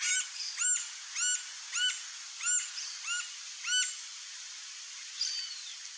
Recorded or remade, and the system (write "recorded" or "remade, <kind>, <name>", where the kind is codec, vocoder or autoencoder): recorded